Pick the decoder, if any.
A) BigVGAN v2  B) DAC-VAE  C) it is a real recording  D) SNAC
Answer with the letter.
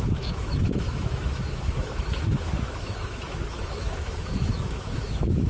B